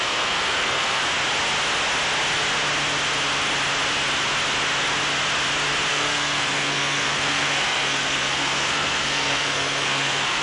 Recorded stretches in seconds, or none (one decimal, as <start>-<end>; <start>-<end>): 1.0-5.9